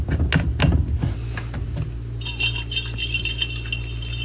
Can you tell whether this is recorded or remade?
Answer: recorded